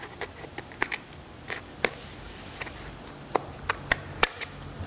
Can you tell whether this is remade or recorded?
recorded